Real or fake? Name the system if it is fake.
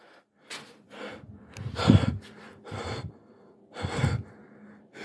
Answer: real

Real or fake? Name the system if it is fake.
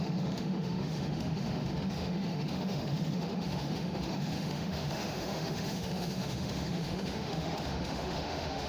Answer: fake, autoencoder, DAC-VAE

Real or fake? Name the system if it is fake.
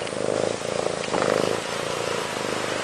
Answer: real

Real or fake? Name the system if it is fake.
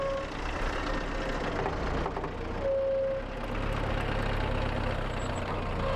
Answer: real